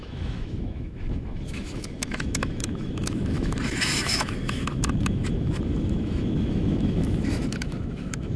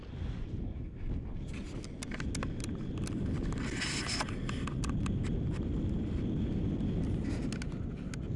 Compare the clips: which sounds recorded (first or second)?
second